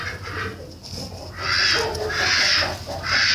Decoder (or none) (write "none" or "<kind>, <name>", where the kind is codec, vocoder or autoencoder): none